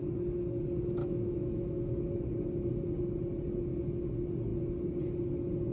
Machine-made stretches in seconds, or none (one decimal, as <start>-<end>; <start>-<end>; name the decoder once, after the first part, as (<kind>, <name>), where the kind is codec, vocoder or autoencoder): 1.0-1.9 (autoencoder, DAC-VAE)